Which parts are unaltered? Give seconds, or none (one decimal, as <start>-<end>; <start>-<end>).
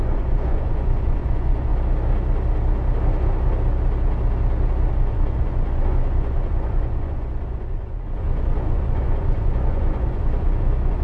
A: 1.7-4.9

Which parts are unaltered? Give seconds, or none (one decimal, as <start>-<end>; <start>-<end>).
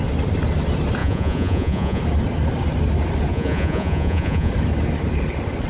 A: 0.0-1.0; 2.0-3.3; 4.5-5.7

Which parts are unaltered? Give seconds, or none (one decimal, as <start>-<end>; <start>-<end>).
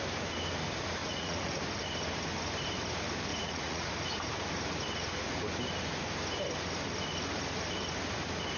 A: 0.0-1.0; 1.5-3.3; 3.9-8.6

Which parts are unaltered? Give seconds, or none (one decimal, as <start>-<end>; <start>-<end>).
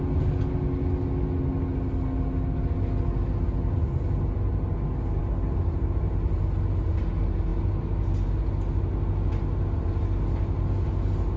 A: 0.0-11.4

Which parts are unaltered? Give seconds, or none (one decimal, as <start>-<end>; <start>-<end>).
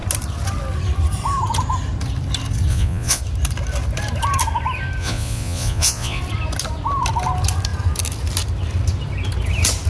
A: 0.0-2.7; 3.2-5.0; 6.2-9.9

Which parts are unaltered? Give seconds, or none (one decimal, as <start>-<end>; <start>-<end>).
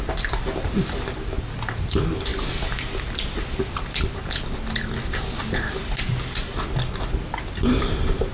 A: 0.0-8.3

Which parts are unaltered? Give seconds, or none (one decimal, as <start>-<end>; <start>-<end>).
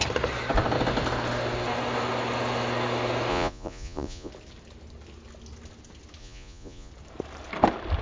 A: 0.0-3.3; 4.3-6.2; 6.9-8.0